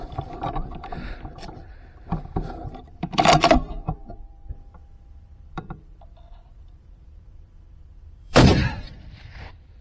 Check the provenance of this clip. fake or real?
fake